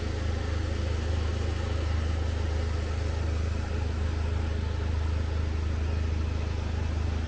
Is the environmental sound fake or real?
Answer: real